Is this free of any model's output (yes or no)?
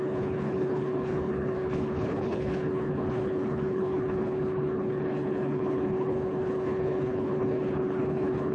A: no